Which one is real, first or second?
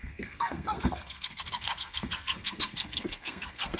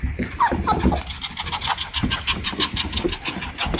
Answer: second